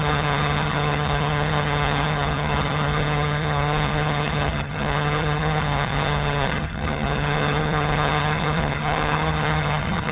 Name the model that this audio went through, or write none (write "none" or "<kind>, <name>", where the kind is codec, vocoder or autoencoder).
vocoder, HiFi-GAN